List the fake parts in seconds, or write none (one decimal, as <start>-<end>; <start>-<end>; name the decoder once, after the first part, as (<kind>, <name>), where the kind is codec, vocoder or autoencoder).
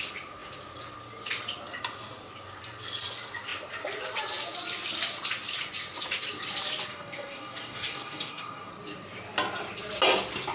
6.9-8.7 (codec, DAC)